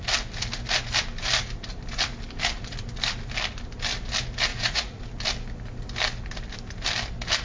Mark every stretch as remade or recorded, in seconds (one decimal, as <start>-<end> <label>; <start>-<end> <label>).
0.0-4.5 recorded; 4.5-5.0 remade; 5.0-7.4 recorded